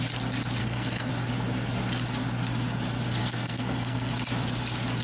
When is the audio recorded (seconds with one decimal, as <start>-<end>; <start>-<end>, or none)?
0.0-0.6; 1.1-3.2; 4.1-5.0